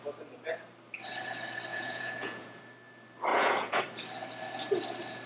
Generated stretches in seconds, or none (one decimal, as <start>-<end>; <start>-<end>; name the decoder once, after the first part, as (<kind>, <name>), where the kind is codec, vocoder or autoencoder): 1.7-2.6 (vocoder, Vocos); 3.3-3.8